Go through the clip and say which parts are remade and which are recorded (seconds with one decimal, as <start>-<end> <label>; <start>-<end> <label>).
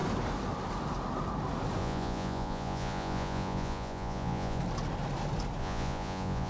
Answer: 0.0-1.8 recorded; 1.8-4.6 remade; 4.6-5.6 recorded; 5.6-6.5 remade